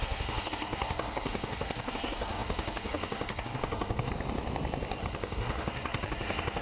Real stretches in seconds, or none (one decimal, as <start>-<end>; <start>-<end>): 4.1-5.0